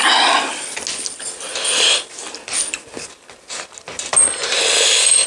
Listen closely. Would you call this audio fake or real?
real